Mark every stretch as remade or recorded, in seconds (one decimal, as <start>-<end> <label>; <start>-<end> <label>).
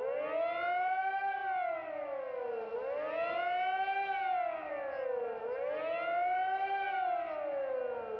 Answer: 0.0-8.2 recorded